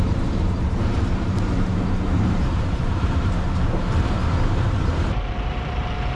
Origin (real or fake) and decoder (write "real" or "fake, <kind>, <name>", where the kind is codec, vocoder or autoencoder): fake, vocoder, BigVGAN v2